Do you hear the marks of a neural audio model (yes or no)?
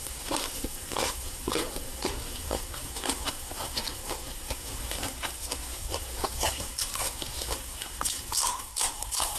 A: yes